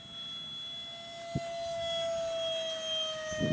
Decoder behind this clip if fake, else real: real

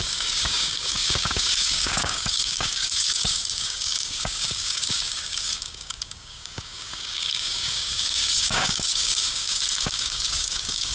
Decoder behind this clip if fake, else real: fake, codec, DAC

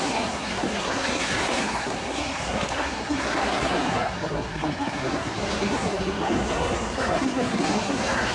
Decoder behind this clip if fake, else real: fake, codec, SNAC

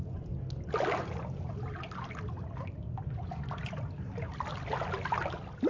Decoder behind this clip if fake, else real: real